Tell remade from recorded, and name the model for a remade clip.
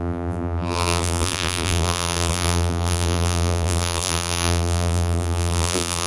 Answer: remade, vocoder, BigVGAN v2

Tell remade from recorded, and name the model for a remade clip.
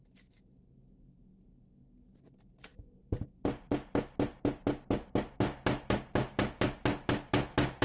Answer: recorded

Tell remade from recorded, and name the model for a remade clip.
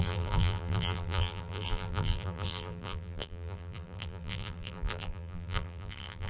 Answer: remade, vocoder, BigVGAN v2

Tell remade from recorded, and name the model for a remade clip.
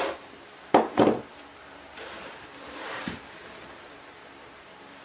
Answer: remade, vocoder, BigVGAN v2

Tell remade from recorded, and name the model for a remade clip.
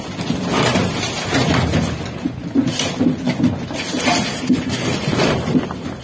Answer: recorded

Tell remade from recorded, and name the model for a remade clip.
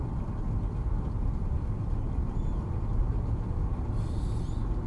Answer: recorded